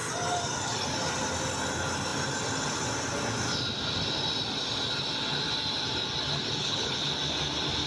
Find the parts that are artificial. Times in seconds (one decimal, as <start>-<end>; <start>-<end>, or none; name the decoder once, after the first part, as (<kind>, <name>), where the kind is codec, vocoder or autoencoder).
6.6-7.1 (codec, HILCodec)

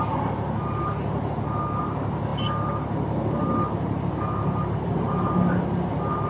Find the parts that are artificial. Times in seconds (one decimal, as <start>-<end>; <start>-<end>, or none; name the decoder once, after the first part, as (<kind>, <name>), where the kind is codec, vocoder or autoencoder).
none

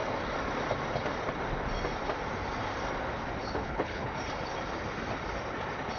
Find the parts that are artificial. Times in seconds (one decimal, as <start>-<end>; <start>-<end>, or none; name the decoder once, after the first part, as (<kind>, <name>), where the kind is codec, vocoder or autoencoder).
3.4-4.1 (codec, HILCodec)

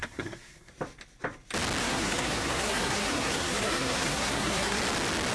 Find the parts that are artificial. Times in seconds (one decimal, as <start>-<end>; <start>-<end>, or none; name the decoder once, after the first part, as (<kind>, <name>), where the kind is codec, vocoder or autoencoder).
0.0-0.7 (codec, SNAC); 1.8-4.8

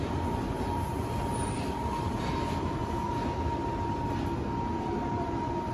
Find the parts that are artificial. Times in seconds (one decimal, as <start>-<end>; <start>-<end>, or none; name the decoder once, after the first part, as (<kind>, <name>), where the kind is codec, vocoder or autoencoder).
0.0-2.8 (vocoder, BigVGAN v2); 4.6-5.7

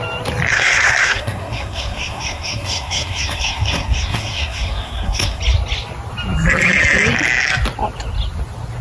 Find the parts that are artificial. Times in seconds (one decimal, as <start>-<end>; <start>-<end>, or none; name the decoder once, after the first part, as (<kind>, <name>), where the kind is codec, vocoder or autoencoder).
0.5-5.4 (codec, SNAC)

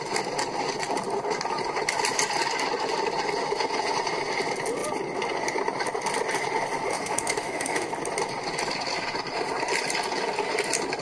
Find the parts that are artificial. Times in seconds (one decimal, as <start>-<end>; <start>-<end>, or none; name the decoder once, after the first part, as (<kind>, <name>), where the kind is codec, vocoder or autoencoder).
6.9-7.9 (autoencoder, DAC-VAE)